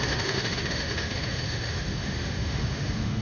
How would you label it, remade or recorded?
remade